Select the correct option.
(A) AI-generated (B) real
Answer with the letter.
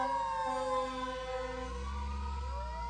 B